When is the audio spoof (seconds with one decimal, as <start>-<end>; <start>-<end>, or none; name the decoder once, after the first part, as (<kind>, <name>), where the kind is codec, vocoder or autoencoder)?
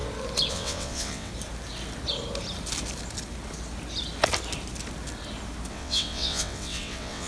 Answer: 0.5-1.3 (vocoder, WaveNeXt); 5.7-7.3